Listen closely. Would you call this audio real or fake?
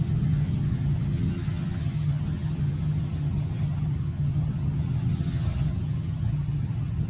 fake